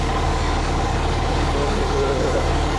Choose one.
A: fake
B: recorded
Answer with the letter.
A